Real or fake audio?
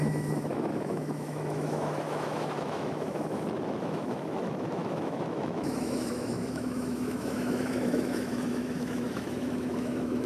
fake